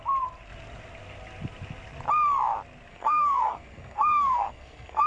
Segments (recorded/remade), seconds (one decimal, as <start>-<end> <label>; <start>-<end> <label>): 0.0-2.9 recorded; 2.9-5.1 remade